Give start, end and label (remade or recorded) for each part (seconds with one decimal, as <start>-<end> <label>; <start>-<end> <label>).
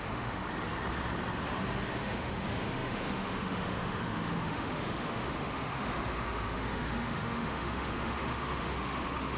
0.0-0.4 remade; 0.4-2.0 recorded; 2.0-9.4 remade